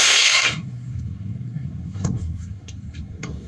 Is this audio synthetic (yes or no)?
yes